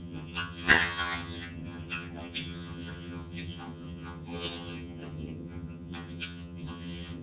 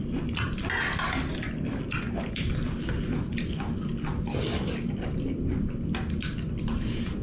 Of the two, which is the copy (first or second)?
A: first